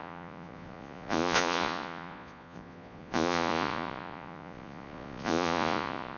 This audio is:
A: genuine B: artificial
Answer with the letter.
B